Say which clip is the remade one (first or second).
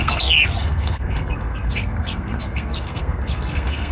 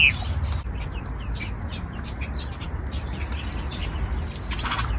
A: first